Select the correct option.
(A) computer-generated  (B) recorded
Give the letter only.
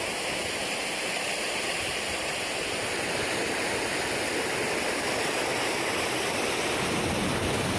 B